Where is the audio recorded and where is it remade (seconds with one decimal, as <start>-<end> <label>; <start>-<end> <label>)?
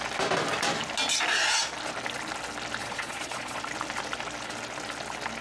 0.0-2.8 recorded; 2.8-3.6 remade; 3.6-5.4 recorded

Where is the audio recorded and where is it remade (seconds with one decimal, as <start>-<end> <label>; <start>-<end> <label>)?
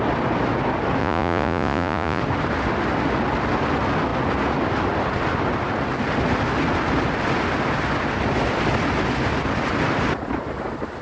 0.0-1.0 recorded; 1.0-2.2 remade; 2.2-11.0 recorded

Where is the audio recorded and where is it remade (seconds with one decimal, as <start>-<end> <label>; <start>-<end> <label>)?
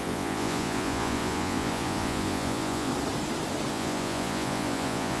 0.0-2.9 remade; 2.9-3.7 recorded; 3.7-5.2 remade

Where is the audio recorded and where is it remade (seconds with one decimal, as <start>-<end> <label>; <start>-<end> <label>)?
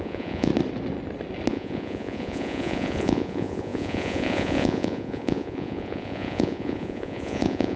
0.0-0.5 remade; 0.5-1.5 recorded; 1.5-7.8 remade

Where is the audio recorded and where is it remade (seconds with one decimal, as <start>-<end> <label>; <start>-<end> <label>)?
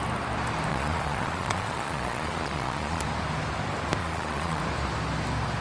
0.0-0.7 recorded; 0.7-3.0 remade; 3.0-4.0 recorded; 4.0-4.6 remade; 4.6-5.6 recorded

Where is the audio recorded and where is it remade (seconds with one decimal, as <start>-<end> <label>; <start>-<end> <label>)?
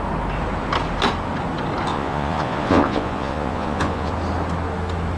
0.0-1.9 recorded; 1.9-4.1 remade; 4.1-5.2 recorded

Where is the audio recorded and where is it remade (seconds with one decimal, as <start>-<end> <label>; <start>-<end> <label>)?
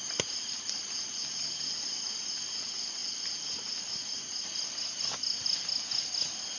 0.0-6.6 recorded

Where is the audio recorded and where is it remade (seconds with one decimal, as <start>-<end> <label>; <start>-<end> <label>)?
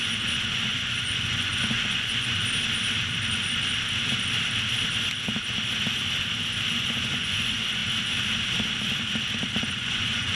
0.0-2.4 remade; 2.4-6.7 recorded; 6.7-7.8 remade; 7.8-9.7 recorded; 9.7-10.3 remade